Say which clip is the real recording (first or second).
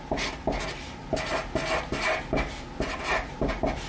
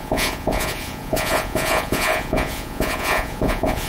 first